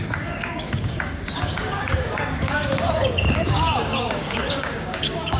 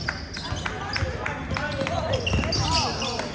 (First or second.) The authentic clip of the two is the second